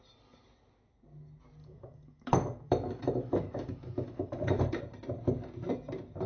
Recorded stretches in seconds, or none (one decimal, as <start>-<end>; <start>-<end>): 0.0-1.6; 4.6-6.3